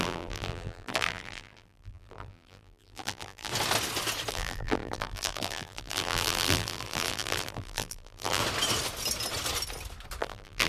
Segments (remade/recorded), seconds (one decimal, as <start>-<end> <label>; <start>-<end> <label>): 0.0-3.5 remade; 3.5-4.3 recorded; 4.3-8.4 remade; 8.4-10.2 recorded; 10.2-10.7 remade